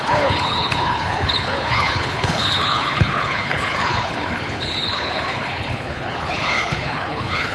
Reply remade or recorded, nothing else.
remade